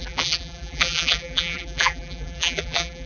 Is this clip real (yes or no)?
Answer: no